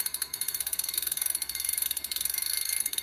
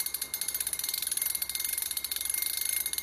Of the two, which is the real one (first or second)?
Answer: second